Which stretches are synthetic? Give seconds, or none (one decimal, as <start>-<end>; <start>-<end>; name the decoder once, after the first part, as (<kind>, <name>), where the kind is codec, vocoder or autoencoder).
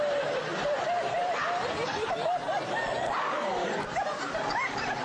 none